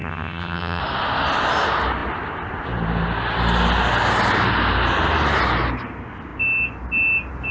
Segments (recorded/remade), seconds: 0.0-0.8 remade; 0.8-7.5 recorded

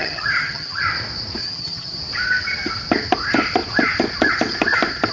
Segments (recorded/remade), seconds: 0.0-0.8 remade; 0.8-1.4 recorded; 1.4-2.0 remade; 2.0-5.1 recorded

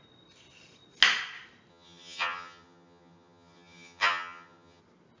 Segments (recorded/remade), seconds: 0.0-1.7 recorded; 1.7-4.8 remade; 4.8-5.2 recorded

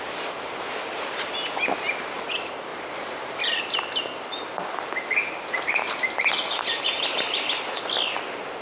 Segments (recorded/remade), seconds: 0.0-8.6 recorded

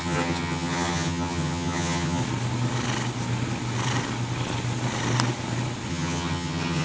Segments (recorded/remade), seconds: 0.0-2.2 remade; 2.2-5.9 recorded; 5.9-6.8 remade

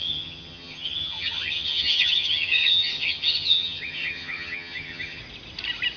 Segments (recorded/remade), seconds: 0.0-5.2 remade; 5.2-6.0 recorded

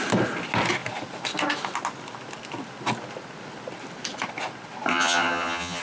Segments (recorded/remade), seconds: 0.0-4.9 recorded; 4.9-5.8 remade

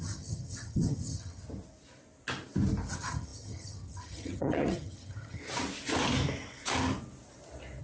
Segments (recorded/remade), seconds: 0.0-1.4 remade; 1.4-2.9 recorded; 2.9-5.4 remade; 5.4-7.8 recorded